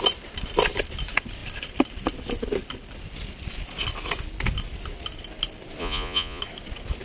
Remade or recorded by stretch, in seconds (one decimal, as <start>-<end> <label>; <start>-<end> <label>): 0.0-5.8 recorded; 5.8-6.4 remade; 6.4-7.0 recorded